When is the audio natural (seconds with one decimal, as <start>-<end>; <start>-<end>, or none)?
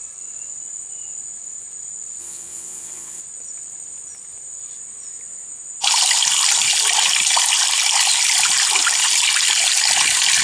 0.0-2.2; 3.2-10.4